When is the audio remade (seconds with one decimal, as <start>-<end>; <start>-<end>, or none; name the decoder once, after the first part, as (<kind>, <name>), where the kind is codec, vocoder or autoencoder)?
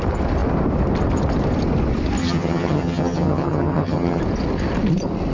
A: 2.2-4.2 (vocoder, HiFi-GAN)